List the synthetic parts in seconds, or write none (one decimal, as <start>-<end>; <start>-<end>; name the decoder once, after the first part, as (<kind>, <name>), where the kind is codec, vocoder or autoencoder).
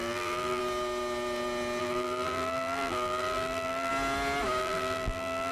0.0-0.6 (vocoder, BigVGAN v2); 1.8-3.9; 4.6-5.5